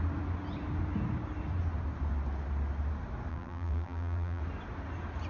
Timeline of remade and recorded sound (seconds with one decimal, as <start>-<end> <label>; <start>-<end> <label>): 0.0-3.3 recorded; 3.3-4.4 remade; 4.4-5.3 recorded